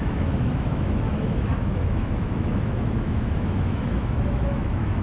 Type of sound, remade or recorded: remade